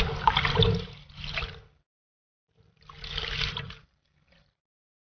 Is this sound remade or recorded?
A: recorded